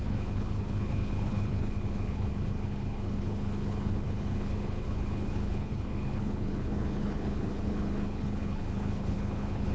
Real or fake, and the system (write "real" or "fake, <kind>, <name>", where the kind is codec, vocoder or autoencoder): fake, codec, HILCodec